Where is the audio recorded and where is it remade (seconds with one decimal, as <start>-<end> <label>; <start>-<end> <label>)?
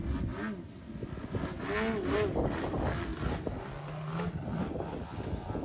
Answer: 0.0-5.6 recorded